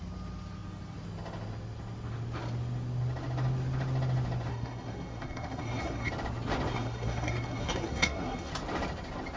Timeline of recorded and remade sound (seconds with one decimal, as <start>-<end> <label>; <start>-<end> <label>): 0.0-4.5 recorded; 4.5-6.1 remade; 6.1-6.7 recorded; 6.7-8.5 remade; 8.5-9.4 recorded